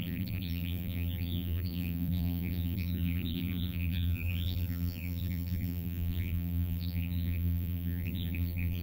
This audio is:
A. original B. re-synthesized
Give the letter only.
B